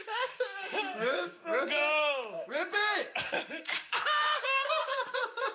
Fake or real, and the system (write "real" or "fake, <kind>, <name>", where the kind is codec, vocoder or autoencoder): fake, codec, DAC